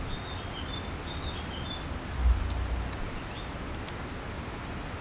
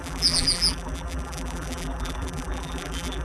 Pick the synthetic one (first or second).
second